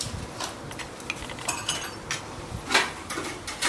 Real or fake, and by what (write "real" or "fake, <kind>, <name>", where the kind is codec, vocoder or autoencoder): real